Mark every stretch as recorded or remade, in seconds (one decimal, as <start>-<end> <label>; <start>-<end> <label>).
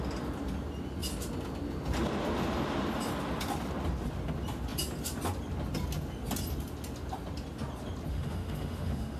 0.0-8.1 recorded; 8.1-9.2 remade